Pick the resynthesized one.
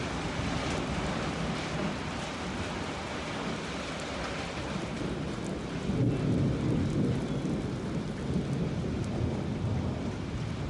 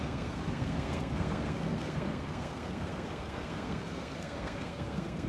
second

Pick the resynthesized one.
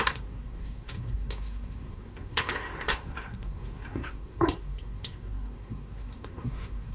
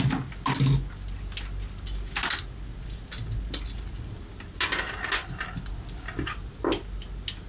first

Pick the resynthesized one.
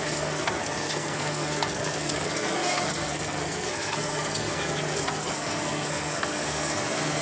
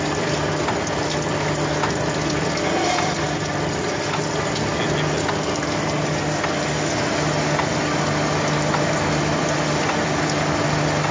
first